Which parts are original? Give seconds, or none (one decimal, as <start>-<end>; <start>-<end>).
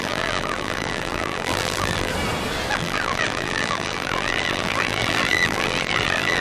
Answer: 2.1-2.7